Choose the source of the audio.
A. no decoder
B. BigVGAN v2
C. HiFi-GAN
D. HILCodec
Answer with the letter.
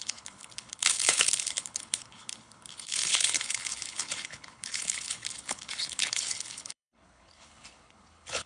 D